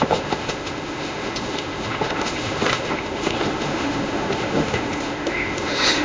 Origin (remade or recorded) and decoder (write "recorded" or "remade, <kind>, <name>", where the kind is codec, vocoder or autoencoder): remade, autoencoder, DAC-VAE